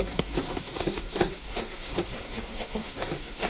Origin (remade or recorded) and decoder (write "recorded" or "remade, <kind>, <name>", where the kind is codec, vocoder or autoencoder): remade, codec, SNAC